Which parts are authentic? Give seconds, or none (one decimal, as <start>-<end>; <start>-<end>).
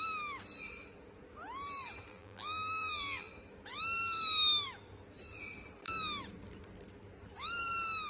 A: 0.0-2.1; 3.3-8.1